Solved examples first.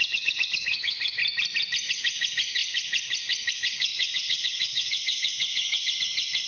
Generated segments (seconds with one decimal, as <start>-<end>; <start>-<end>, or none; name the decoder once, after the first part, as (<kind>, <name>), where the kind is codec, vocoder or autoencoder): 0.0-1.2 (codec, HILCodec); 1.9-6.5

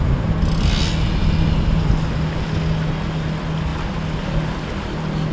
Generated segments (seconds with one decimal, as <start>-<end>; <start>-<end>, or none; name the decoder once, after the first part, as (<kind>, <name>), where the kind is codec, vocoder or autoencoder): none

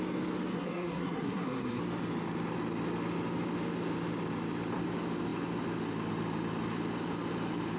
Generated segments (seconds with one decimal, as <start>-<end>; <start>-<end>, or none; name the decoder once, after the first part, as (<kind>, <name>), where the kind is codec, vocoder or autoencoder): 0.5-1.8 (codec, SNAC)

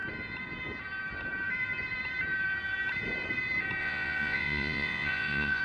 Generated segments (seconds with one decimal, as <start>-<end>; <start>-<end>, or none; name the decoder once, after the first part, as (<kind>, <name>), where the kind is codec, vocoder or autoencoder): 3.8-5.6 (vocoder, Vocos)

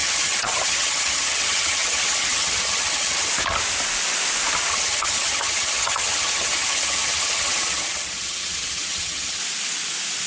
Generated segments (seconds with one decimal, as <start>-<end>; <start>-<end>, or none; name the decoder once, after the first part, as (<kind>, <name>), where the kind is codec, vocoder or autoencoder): 0.0-3.3 (vocoder, HiFi-GAN); 4.7-9.4

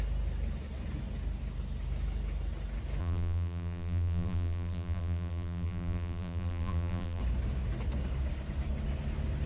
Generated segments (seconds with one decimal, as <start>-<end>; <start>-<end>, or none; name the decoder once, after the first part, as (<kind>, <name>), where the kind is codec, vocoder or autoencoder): 3.0-7.2 (vocoder, BigVGAN v2)

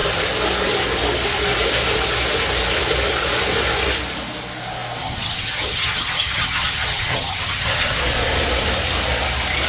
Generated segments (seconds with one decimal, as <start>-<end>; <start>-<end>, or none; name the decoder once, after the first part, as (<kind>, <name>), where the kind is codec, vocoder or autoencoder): 5.0-8.0 (vocoder, HiFi-GAN)